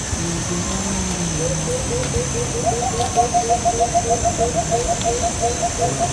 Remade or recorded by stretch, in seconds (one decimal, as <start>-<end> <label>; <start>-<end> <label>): 0.0-6.1 recorded